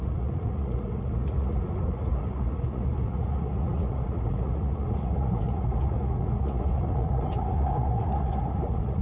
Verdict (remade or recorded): remade